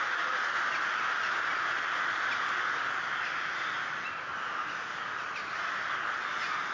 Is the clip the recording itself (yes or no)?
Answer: yes